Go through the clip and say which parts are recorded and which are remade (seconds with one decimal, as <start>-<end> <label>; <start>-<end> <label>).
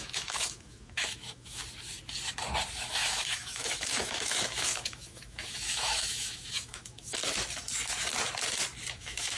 0.0-1.6 remade; 1.6-2.9 recorded; 2.9-7.2 remade; 7.2-8.9 recorded; 8.9-9.4 remade